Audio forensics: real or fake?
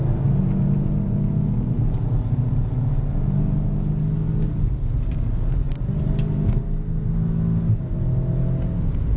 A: real